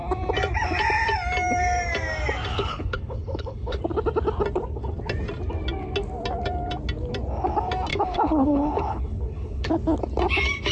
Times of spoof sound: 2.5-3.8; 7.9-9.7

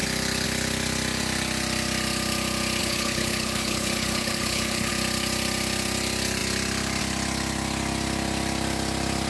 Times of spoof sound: 2.8-4.9

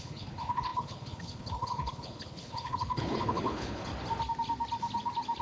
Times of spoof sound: 0.0-3.9

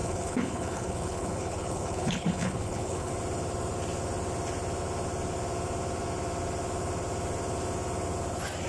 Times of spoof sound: 0.0-3.1